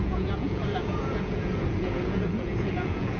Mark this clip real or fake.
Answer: fake